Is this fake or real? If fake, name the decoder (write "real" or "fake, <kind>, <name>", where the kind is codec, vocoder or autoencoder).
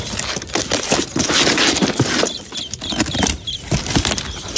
real